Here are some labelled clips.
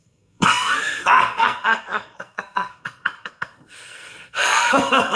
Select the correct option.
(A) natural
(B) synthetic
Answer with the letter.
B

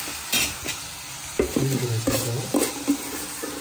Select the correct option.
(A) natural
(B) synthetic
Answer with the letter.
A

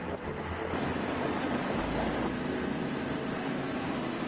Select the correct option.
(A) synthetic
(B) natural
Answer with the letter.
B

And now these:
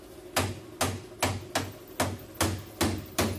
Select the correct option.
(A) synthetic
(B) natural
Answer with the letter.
B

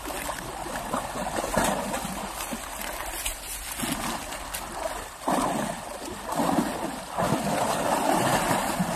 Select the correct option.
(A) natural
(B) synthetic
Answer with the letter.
A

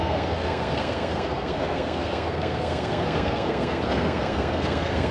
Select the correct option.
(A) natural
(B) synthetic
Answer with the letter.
B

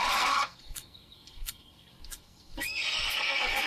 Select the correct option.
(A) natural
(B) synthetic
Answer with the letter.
B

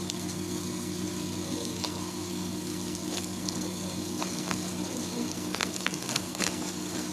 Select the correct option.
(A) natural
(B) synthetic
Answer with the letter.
B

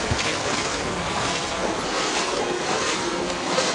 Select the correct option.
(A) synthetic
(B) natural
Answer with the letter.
A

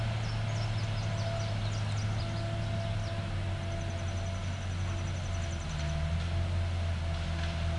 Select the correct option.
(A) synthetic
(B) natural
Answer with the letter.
B